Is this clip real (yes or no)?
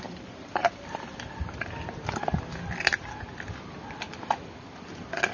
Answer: yes